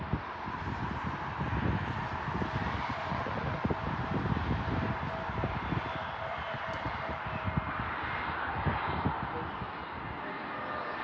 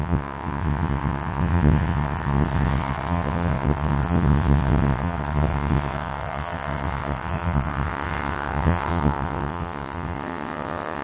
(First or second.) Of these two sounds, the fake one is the second